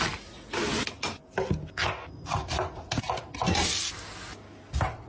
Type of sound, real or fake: real